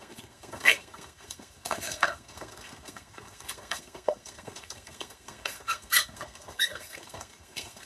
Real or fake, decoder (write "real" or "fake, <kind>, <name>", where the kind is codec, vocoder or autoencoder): fake, codec, SNAC